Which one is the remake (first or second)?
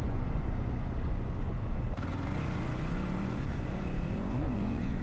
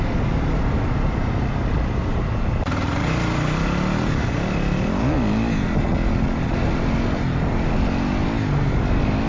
first